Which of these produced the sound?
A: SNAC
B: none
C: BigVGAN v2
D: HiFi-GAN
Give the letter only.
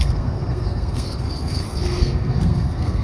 A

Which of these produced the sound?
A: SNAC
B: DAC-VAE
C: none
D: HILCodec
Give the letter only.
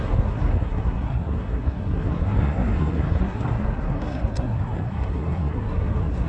A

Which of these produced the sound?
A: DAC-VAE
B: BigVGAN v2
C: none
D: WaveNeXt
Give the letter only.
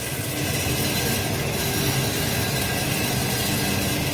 C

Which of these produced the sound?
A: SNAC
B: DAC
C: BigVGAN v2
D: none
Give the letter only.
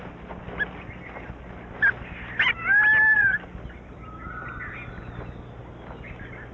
D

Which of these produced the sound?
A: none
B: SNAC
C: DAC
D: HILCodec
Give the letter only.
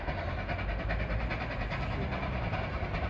A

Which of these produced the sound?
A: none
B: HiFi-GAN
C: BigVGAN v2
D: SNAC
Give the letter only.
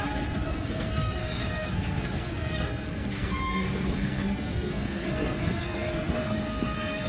D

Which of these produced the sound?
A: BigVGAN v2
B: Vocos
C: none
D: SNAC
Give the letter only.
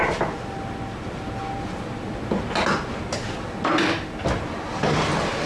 C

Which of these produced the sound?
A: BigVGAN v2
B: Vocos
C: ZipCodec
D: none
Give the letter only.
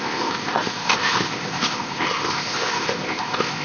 C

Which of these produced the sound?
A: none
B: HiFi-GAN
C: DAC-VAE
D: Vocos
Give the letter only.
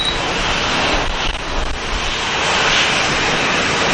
A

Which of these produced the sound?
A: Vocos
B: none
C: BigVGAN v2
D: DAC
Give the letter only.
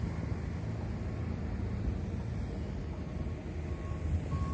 B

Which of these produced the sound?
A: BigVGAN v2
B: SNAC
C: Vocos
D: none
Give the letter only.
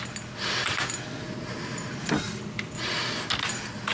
D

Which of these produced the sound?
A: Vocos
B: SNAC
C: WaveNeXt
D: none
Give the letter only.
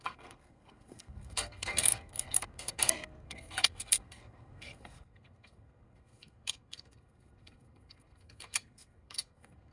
B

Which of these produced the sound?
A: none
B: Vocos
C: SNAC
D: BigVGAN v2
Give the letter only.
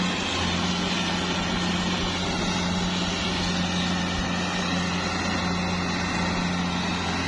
A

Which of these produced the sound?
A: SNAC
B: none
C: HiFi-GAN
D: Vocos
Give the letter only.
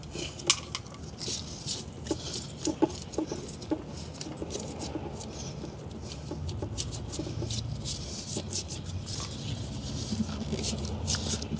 B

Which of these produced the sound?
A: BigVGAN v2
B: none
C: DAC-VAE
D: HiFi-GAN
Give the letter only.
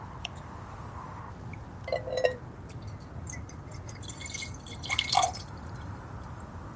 B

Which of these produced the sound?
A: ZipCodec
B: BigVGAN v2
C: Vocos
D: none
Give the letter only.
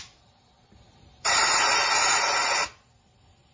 D